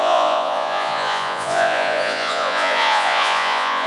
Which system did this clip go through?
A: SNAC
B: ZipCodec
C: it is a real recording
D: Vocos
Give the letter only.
D